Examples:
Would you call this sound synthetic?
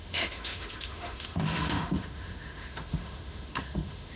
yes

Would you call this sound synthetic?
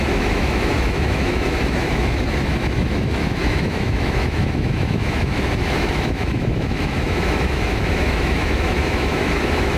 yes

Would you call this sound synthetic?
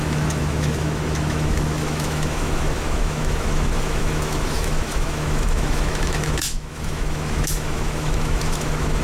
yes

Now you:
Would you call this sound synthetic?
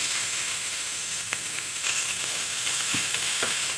yes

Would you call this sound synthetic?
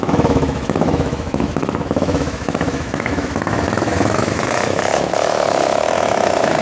yes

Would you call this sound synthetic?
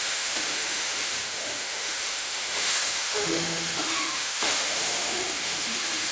yes